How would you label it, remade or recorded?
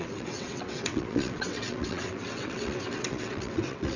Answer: remade